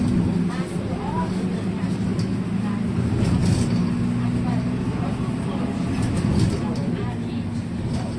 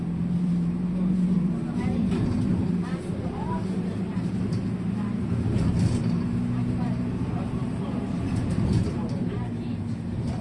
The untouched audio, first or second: first